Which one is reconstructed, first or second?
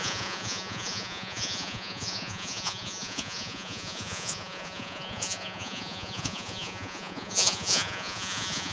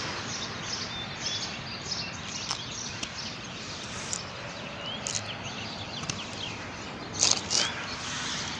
first